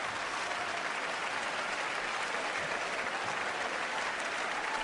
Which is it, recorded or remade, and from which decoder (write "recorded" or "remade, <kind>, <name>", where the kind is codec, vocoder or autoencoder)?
recorded